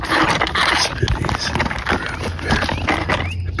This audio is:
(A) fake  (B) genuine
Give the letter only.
B